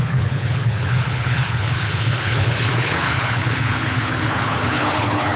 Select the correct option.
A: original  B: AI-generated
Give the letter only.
B